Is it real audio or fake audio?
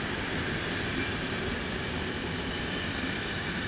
fake